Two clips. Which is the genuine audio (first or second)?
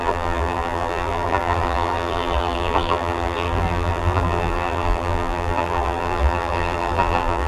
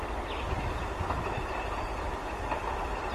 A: second